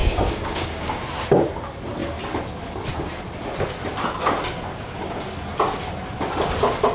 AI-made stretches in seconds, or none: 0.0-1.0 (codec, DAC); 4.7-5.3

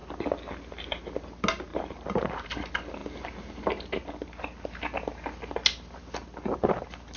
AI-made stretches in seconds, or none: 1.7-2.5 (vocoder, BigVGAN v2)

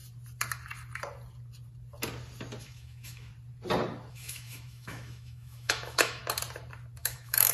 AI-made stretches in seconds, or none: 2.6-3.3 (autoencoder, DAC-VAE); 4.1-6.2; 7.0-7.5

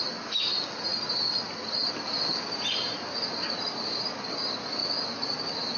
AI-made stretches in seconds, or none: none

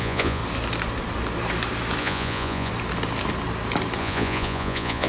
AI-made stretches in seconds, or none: 0.0-0.4 (vocoder, Vocos); 2.0-2.7; 4.0-5.1